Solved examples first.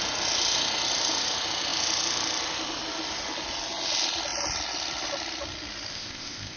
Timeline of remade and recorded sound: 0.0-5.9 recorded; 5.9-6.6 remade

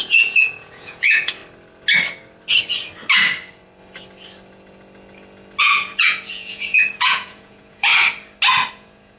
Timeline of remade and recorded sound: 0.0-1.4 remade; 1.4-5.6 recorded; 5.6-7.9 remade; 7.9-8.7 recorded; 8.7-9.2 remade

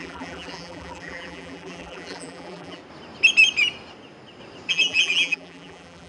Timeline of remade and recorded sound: 0.0-2.8 remade; 2.8-4.7 recorded; 4.7-6.1 remade

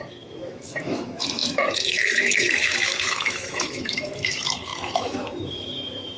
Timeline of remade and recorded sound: 0.0-6.2 remade

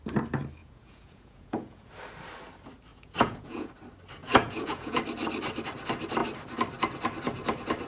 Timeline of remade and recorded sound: 0.0-0.6 recorded; 0.6-1.9 remade; 1.9-2.9 recorded; 2.9-3.7 remade; 3.7-4.2 recorded; 4.2-5.0 remade; 5.0-7.9 recorded

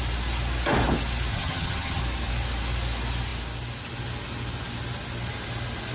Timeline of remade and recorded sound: 0.0-1.3 recorded; 1.3-2.0 remade; 2.0-5.9 recorded

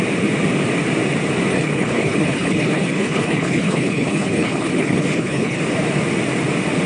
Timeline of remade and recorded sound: 0.0-1.5 recorded; 1.5-5.6 remade; 5.6-6.9 recorded

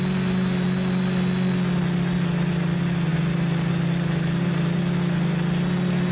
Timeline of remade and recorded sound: 0.0-6.1 recorded